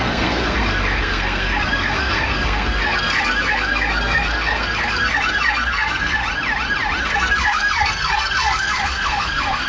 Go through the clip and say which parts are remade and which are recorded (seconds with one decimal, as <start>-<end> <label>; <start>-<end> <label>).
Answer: 0.0-6.2 remade; 6.2-7.0 recorded; 7.0-9.7 remade